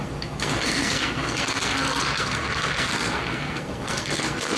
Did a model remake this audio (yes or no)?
yes